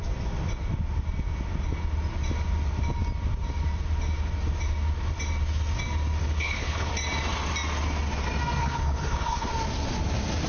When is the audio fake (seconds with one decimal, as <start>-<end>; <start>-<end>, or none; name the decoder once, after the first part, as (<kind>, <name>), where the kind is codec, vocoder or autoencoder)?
6.2-6.9 (codec, HILCodec); 8.6-9.5